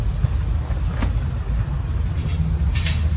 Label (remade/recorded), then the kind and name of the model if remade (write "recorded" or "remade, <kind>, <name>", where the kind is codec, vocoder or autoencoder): recorded